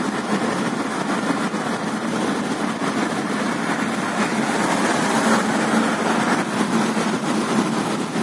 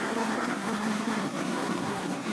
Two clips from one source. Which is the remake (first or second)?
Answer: second